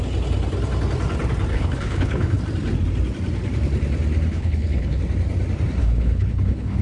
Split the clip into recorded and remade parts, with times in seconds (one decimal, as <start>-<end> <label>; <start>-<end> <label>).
0.0-1.5 recorded; 1.5-2.4 remade; 2.4-4.3 recorded; 4.3-5.0 remade; 5.0-5.8 recorded; 5.8-6.8 remade

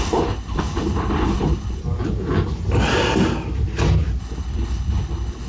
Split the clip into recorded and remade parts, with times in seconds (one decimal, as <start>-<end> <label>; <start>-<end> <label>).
0.0-1.8 remade; 1.8-4.2 recorded; 4.2-5.5 remade

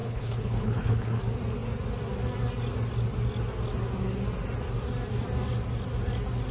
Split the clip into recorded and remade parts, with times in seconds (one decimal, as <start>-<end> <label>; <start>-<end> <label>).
0.0-1.2 remade; 1.2-6.5 recorded

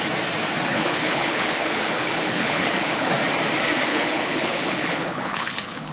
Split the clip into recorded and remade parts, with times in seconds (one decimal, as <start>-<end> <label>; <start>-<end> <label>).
0.0-0.7 recorded; 0.7-3.1 remade; 3.1-3.9 recorded; 3.9-5.9 remade

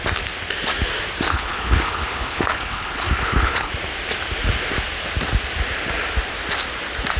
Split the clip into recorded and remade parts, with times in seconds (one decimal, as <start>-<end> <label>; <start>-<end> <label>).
0.0-1.3 recorded; 1.3-3.7 remade; 3.7-7.2 recorded